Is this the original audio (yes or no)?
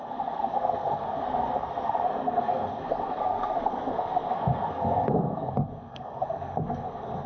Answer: no